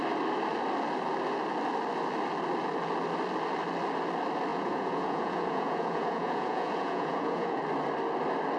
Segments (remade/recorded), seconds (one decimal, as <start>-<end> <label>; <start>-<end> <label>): 0.0-4.5 recorded; 4.5-7.6 remade; 7.6-8.6 recorded